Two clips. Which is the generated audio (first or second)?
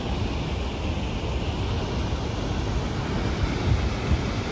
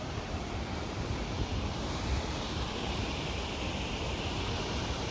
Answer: second